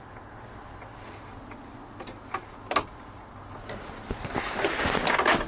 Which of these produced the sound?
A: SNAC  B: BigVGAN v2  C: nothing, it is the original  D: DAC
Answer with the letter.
C